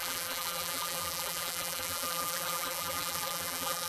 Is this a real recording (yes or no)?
no